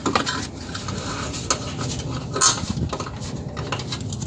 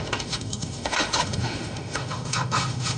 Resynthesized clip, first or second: second